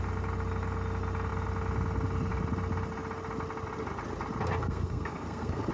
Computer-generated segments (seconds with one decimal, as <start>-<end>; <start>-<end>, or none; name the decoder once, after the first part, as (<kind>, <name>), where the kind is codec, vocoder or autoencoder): 4.6-5.7 (codec, SNAC)